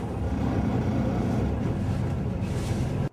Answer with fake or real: real